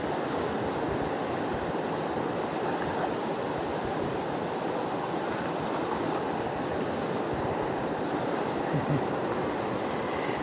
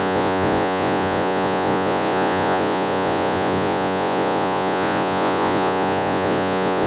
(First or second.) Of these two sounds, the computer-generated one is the second